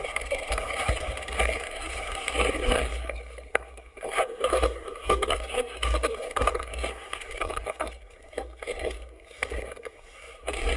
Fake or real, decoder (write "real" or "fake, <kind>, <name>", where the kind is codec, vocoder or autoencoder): fake, codec, SNAC